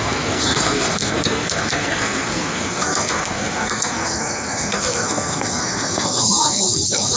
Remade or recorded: remade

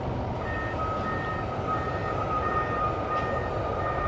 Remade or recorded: recorded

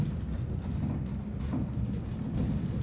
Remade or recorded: recorded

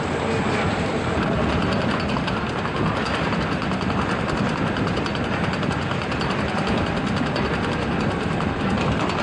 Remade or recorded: recorded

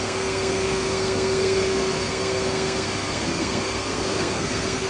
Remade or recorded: remade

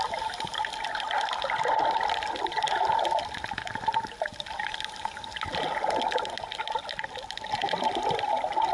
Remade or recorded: recorded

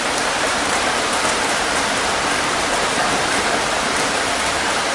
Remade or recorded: remade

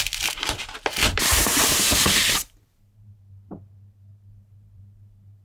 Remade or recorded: remade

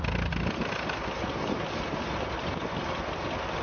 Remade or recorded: recorded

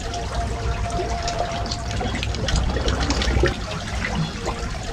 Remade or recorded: recorded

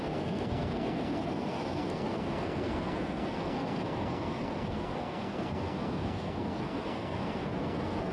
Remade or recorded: remade